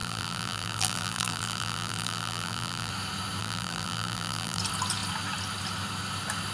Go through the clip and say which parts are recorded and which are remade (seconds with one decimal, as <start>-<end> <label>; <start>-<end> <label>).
0.0-2.9 remade; 2.9-3.4 recorded; 3.4-4.6 remade; 4.6-6.5 recorded